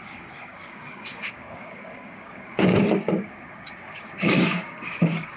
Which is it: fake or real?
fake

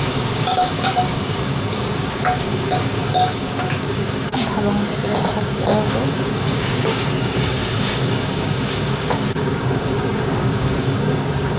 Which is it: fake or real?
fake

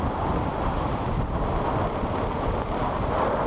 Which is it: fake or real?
real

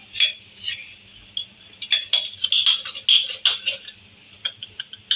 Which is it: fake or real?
real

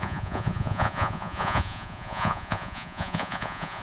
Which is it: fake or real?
fake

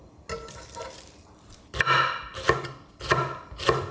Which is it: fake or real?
real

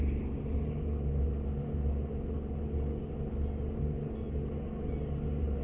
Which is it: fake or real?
real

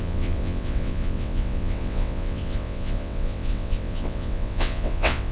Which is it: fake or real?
fake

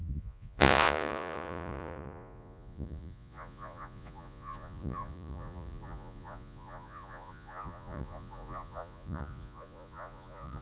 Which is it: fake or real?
fake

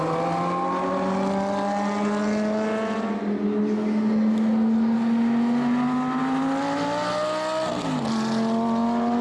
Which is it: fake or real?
real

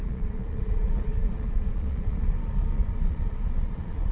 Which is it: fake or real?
fake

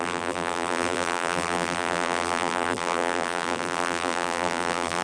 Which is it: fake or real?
fake